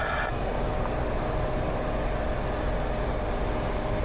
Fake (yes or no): no